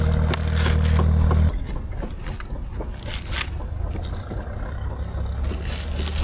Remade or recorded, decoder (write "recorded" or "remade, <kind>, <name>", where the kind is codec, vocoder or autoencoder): recorded